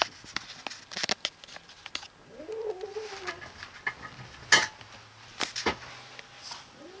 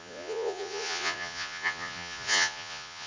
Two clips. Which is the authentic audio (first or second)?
first